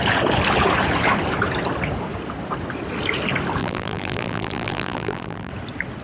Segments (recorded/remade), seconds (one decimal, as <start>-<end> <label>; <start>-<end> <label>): 0.0-3.6 recorded; 3.6-5.5 remade; 5.5-6.0 recorded